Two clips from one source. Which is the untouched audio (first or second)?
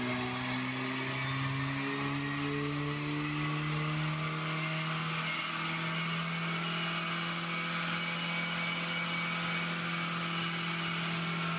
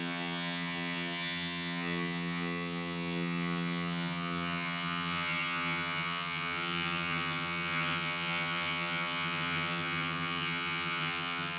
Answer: first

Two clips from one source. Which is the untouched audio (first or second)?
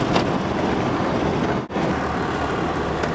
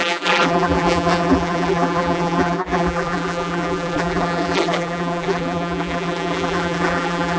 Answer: first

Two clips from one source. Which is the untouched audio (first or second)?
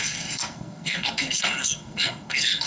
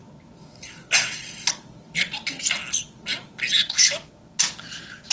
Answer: second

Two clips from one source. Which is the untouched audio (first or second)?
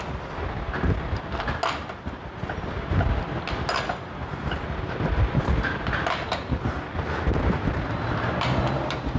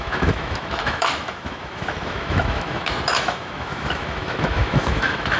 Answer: first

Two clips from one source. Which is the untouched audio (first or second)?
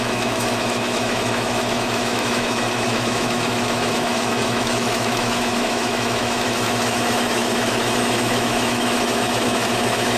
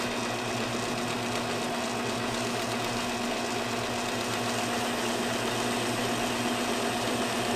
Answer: second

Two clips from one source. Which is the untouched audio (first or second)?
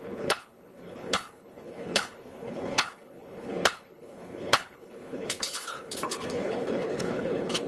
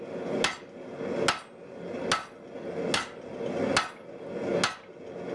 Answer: second